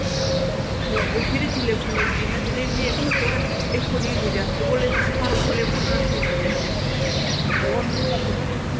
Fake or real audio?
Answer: real